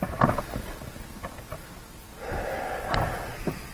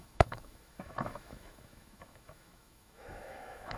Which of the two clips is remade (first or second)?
second